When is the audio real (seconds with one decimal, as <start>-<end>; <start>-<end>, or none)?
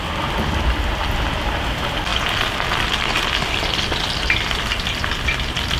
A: 0.0-2.1